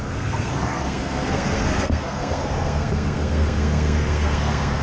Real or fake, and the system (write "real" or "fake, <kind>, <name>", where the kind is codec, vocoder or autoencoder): fake, codec, SNAC